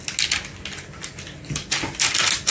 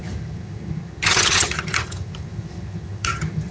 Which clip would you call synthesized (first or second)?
second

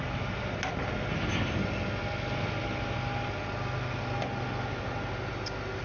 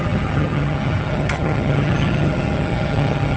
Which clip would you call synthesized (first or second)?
second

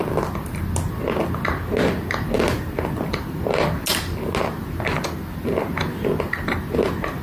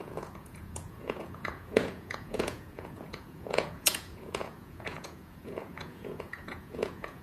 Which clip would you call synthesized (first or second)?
second